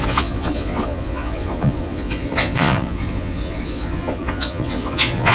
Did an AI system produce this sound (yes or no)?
yes